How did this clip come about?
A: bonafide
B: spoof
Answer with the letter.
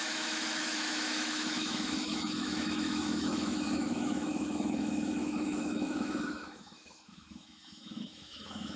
B